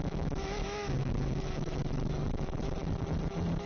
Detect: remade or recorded remade